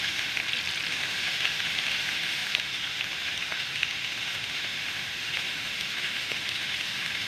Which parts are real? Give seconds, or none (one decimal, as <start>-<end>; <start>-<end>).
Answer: 0.4-0.9